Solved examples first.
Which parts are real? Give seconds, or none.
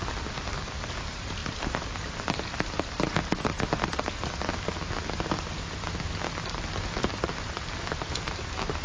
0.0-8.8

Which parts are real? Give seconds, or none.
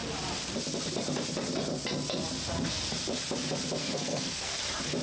0.0-3.8; 4.6-5.0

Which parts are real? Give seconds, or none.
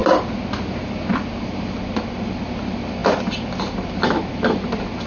1.1-3.0; 3.9-5.1